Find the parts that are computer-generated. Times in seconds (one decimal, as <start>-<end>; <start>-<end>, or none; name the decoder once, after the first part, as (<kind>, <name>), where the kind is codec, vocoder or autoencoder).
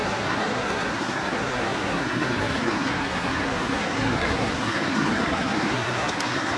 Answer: 0.0-6.6 (codec, SNAC)